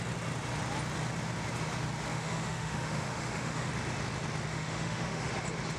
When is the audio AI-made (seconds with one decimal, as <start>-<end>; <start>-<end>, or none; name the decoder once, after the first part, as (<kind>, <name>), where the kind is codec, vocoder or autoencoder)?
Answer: 2.1-3.7 (autoencoder, DAC-VAE); 4.5-5.3